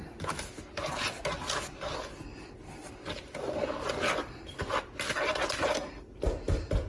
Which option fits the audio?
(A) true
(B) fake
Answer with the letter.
A